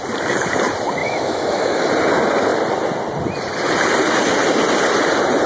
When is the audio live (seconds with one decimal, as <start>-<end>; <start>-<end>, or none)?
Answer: 0.0-1.0; 1.9-5.5

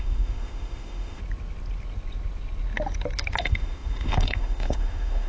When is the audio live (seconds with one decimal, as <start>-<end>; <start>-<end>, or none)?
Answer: 1.2-3.4

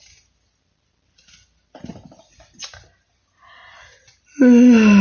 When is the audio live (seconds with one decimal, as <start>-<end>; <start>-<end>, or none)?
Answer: 0.0-5.0

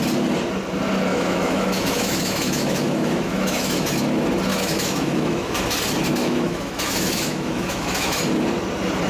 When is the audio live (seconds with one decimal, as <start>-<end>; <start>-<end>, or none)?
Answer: 0.0-1.1; 4.0-4.5; 5.6-6.2; 8.2-9.1

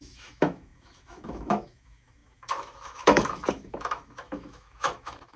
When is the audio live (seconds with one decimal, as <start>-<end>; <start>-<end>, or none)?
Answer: none